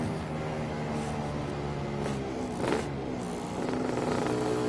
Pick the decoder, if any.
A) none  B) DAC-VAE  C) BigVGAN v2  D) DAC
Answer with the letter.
A